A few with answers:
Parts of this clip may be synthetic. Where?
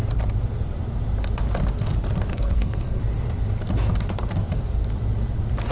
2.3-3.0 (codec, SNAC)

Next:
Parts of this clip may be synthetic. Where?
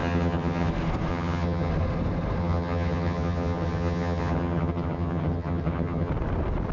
0.0-0.7 (vocoder, HiFi-GAN); 1.1-1.7; 2.4-6.1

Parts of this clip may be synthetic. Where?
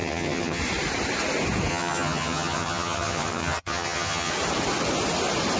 0.0-0.6 (vocoder, HiFi-GAN); 1.7-4.3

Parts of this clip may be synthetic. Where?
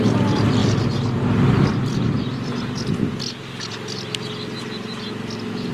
0.0-3.1 (vocoder, BigVGAN v2)